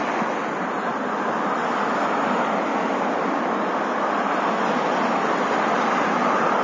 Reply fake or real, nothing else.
real